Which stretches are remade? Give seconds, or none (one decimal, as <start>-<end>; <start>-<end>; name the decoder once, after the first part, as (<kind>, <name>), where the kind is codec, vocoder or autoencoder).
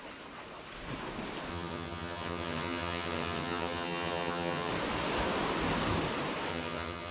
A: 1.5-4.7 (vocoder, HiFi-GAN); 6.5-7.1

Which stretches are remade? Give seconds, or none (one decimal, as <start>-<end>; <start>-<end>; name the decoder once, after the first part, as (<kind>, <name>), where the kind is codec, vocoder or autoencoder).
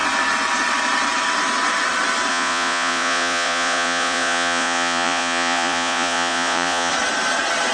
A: 2.3-6.9 (vocoder, Vocos)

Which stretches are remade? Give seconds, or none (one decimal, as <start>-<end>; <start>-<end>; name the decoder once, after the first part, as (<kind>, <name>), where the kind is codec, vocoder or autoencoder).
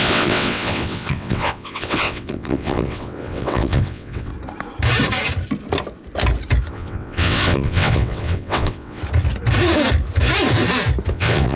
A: 0.0-4.3 (vocoder, WaveNeXt); 6.7-9.0; 11.1-11.6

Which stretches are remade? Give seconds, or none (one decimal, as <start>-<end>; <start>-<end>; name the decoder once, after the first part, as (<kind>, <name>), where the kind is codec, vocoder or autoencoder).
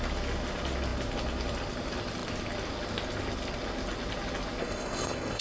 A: 4.6-5.4 (codec, SNAC)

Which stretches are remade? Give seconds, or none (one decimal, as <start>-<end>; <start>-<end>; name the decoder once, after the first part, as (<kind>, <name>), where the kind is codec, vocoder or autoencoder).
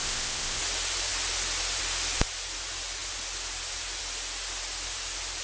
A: 0.0-0.6 (codec, ZipCodec)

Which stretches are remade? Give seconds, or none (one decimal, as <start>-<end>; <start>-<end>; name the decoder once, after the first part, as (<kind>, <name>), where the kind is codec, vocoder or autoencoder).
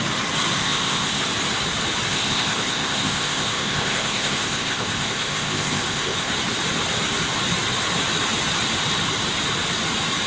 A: 0.6-1.2 (codec, ZipCodec); 2.1-6.3